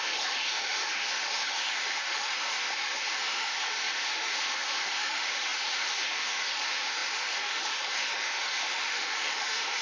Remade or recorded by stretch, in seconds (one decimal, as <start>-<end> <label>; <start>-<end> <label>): 0.0-9.8 remade